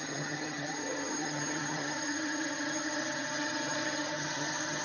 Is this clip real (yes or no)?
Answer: no